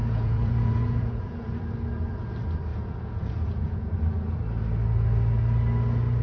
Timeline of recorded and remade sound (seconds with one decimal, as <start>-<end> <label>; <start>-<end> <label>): 0.0-1.6 remade; 1.6-2.7 recorded; 2.7-4.0 remade; 4.0-6.2 recorded